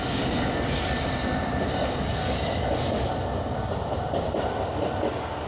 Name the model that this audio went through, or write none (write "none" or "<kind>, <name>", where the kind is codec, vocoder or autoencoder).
none